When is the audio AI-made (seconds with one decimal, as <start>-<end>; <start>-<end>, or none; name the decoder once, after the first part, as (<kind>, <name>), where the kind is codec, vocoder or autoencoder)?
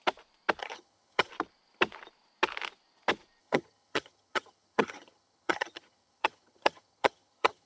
0.6-1.3 (vocoder, HiFi-GAN); 3.4-7.7